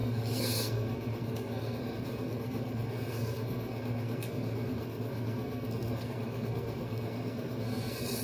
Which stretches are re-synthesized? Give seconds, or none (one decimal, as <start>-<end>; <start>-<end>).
0.0-8.2